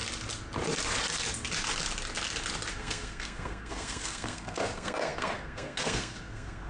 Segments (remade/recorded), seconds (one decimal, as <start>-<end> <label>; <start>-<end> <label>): 0.0-2.7 recorded; 2.7-6.7 remade